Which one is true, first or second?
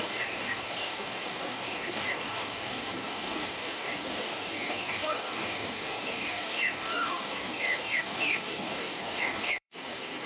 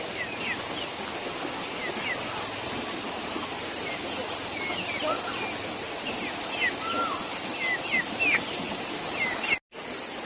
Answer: second